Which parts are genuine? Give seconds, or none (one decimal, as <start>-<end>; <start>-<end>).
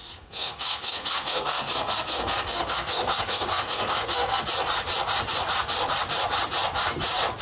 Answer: 4.4-7.4